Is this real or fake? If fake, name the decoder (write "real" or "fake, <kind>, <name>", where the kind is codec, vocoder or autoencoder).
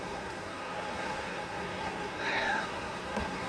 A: fake, codec, SNAC